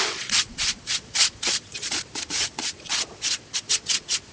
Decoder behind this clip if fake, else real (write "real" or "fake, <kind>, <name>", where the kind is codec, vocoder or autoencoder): fake, vocoder, Vocos